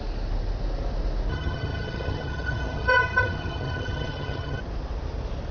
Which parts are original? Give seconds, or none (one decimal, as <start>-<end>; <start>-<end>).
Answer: 0.0-1.3; 4.6-5.5